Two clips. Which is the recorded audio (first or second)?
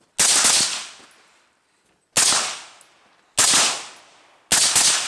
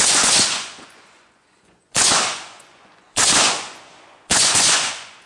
first